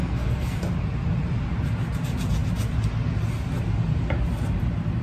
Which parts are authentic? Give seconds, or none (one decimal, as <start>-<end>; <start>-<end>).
0.6-5.0